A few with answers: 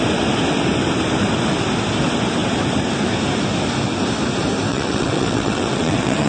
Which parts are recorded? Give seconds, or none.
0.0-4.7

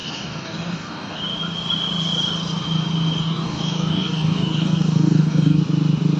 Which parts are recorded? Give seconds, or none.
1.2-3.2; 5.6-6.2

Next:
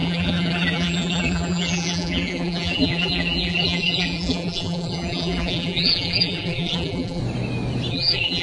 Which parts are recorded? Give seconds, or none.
7.2-7.9